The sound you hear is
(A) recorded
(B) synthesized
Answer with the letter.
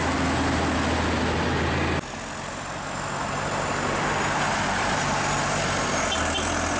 A